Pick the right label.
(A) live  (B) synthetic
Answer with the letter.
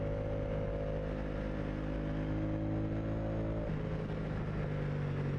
A